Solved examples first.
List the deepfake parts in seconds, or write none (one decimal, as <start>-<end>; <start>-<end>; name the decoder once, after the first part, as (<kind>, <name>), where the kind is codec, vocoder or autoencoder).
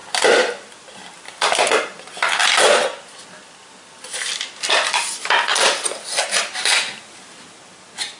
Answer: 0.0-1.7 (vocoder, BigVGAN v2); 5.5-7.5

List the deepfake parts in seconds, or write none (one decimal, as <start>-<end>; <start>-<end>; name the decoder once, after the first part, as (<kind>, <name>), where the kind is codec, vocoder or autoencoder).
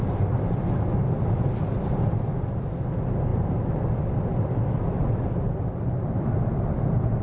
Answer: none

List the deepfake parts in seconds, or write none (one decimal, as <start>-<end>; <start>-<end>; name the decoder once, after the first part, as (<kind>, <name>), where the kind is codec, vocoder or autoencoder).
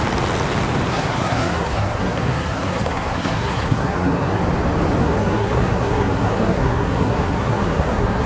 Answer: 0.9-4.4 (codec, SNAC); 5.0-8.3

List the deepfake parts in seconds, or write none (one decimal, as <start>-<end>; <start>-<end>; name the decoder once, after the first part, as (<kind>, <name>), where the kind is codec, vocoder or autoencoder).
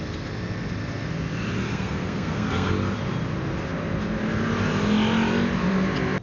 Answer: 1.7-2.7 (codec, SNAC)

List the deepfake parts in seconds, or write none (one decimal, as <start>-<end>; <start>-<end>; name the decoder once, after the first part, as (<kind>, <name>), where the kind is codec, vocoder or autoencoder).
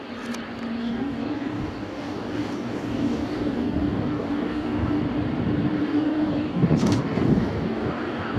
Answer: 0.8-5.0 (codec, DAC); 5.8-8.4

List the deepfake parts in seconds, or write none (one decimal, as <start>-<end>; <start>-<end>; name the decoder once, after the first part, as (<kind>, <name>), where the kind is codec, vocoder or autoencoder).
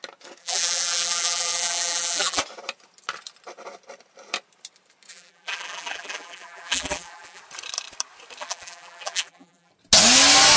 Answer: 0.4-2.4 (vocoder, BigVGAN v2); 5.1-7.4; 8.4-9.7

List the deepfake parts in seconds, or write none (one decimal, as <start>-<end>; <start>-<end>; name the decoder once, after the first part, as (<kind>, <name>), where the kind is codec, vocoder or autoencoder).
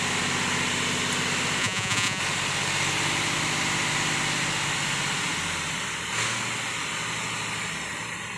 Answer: 1.6-2.2 (vocoder, Vocos)